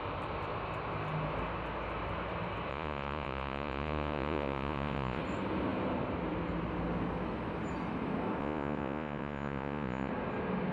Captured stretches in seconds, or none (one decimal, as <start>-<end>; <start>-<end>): 0.0-2.7; 5.2-8.4; 10.1-10.7